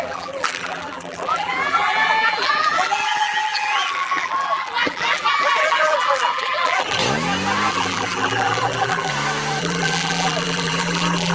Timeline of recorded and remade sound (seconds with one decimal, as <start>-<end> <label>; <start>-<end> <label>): 0.0-7.0 remade; 7.0-7.7 recorded; 7.7-9.1 remade; 9.1-9.6 recorded; 9.6-11.3 remade